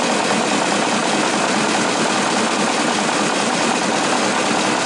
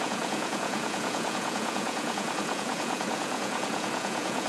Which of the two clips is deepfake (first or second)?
second